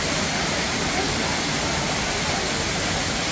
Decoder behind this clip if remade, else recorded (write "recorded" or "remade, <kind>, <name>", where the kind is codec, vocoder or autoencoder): recorded